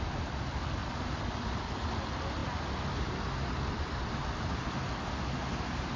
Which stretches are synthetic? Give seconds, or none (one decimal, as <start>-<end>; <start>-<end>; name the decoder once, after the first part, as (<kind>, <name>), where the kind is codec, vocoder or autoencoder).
none